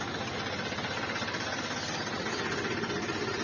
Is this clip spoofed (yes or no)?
no